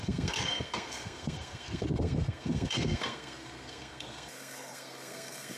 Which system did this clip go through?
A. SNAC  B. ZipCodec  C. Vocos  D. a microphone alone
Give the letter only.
A